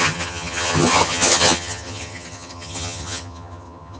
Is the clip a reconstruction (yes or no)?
yes